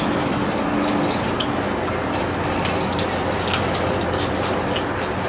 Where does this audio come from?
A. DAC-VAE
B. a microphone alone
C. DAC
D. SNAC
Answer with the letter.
B